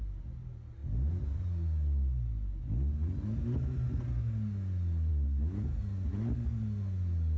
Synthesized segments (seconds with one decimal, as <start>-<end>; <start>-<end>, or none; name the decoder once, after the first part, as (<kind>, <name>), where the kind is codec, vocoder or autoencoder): none